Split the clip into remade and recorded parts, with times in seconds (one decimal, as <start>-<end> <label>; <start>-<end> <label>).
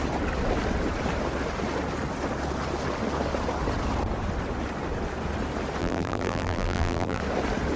0.0-5.8 recorded; 5.8-7.2 remade; 7.2-7.8 recorded